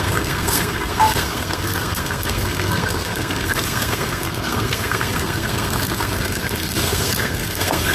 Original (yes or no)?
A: no